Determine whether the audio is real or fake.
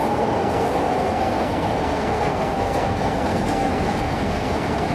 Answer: fake